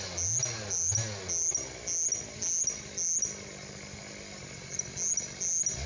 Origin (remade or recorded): recorded